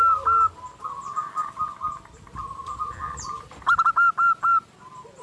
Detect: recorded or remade recorded